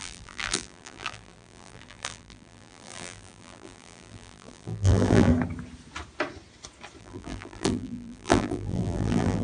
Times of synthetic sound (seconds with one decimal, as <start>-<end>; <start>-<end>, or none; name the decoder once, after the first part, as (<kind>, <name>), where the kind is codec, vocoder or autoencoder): 0.0-5.3 (vocoder, BigVGAN v2); 7.0-9.4